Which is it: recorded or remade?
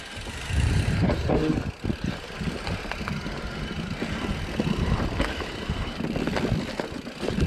recorded